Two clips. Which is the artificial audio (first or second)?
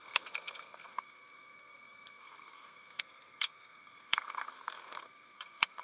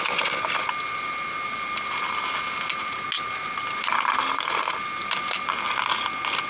first